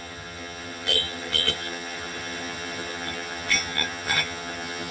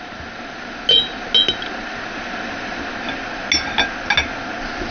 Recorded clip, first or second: second